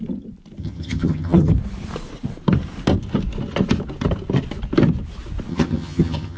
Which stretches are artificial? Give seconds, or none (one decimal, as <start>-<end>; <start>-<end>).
0.6-1.5; 5.5-6.4